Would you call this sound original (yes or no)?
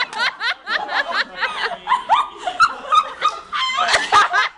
yes